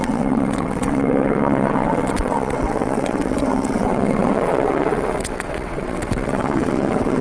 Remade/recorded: remade